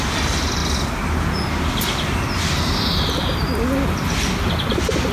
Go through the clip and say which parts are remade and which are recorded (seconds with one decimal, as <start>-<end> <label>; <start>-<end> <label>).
0.0-0.6 remade; 0.6-1.7 recorded; 1.7-5.1 remade